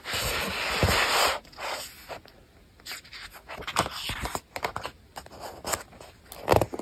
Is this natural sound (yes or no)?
yes